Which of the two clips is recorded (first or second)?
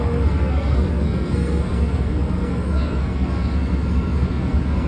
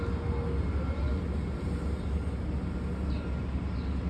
second